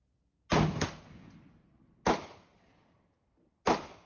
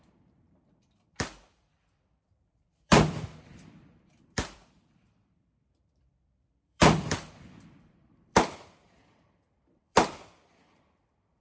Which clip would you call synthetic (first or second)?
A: second